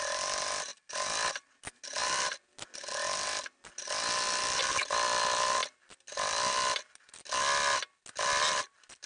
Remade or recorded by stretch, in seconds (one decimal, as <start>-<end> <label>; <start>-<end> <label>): 0.0-9.1 recorded